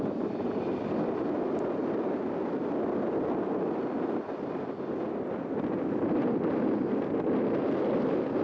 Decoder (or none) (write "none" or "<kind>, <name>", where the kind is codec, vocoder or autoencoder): none